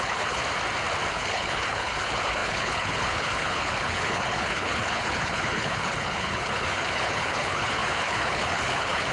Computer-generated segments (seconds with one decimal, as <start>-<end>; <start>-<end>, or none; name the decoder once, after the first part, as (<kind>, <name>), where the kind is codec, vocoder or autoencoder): 0.0-0.4 (codec, HILCodec); 1.1-9.1